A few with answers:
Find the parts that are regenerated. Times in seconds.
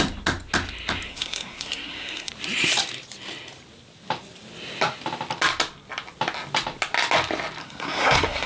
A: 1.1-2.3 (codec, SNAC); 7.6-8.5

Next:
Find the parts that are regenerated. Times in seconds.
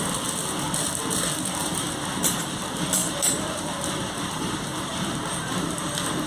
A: 1.6-2.6 (vocoder, BigVGAN v2); 3.0-5.8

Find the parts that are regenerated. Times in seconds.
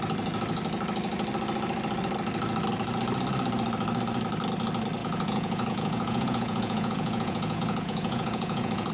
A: 5.0-8.9 (vocoder, Vocos)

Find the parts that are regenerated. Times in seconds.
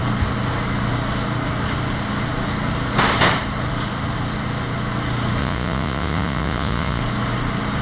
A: 5.4-7.0 (vocoder, Vocos)